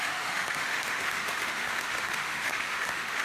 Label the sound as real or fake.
fake